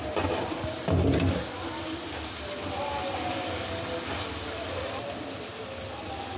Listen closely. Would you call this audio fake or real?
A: real